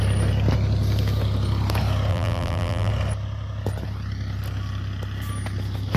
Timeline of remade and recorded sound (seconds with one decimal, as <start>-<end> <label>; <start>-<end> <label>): 0.0-2.1 recorded; 2.1-2.9 remade; 2.9-6.0 recorded